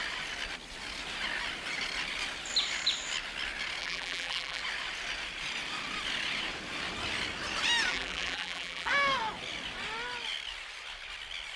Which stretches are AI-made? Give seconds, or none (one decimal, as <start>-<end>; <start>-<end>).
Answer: 3.8-4.6; 7.9-8.9